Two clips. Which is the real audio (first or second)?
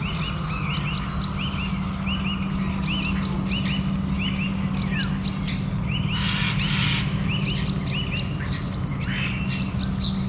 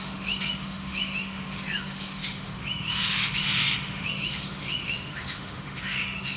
first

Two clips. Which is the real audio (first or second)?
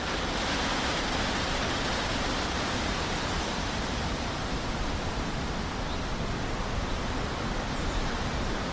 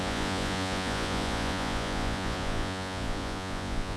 first